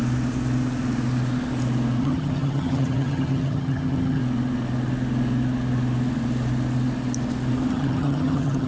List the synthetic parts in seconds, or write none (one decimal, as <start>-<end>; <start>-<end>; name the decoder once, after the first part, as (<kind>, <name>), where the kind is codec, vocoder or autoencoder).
2.0-4.2 (vocoder, HiFi-GAN); 7.7-8.7